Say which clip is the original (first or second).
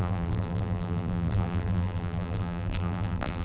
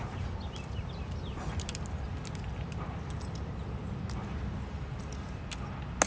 second